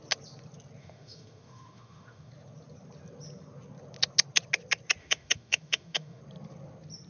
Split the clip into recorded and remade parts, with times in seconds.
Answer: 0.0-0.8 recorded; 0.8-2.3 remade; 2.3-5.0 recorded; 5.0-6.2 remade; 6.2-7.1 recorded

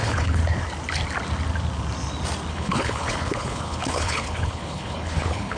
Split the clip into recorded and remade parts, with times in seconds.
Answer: 0.0-0.4 remade; 0.4-2.5 recorded; 2.5-5.6 remade

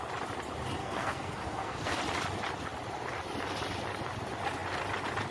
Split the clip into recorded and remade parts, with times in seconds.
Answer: 0.0-0.8 recorded; 0.8-2.0 remade; 2.0-5.3 recorded